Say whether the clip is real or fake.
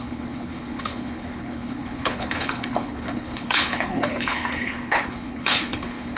fake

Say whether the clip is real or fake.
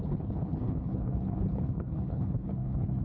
fake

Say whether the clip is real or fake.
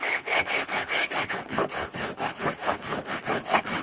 fake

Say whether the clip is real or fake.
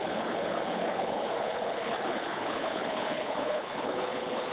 fake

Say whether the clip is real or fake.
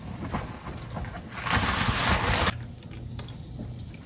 real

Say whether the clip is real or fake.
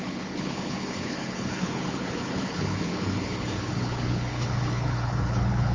fake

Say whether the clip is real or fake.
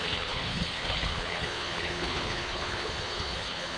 fake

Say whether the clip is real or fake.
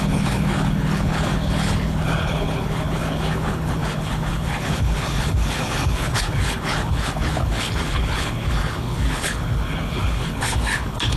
fake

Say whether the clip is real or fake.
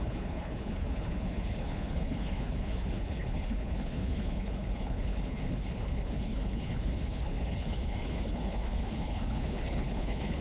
fake